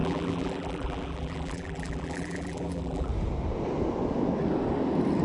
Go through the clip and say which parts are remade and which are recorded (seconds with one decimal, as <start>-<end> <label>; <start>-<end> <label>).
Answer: 0.0-3.1 remade; 3.1-5.2 recorded